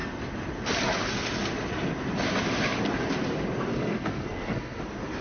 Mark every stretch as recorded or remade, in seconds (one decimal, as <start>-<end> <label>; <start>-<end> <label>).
0.0-3.7 recorded; 3.7-4.8 remade; 4.8-5.2 recorded